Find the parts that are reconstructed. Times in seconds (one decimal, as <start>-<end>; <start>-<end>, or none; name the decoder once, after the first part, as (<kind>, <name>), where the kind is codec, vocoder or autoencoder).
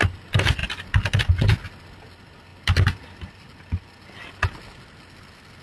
none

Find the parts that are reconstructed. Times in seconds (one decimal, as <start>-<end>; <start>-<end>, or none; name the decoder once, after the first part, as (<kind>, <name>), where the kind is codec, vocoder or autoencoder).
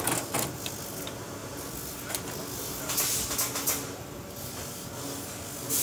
none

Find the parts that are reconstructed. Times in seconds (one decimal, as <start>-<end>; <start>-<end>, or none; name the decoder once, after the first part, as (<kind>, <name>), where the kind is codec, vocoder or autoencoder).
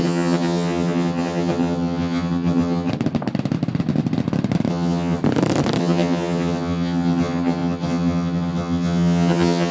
0.0-2.9 (vocoder, HiFi-GAN); 4.7-5.2; 5.8-9.7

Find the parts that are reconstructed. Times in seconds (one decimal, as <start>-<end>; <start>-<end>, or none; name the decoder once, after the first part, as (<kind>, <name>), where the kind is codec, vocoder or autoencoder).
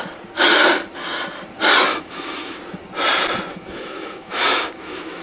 1.9-2.6 (autoencoder, DAC-VAE); 3.5-5.2